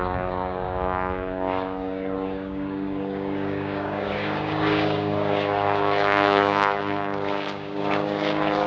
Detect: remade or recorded remade